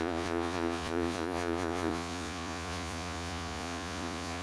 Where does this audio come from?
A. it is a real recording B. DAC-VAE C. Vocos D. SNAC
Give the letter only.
C